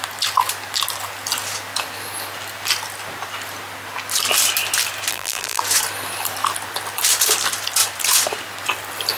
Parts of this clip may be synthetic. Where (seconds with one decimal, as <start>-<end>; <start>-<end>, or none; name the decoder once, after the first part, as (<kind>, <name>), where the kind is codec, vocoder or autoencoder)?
5.1-5.6 (vocoder, BigVGAN v2)